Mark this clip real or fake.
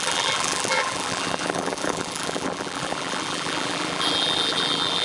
fake